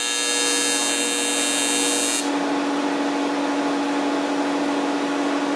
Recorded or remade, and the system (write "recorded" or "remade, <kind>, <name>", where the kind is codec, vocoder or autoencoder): recorded